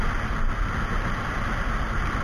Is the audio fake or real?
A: real